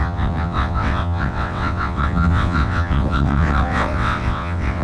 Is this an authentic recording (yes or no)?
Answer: no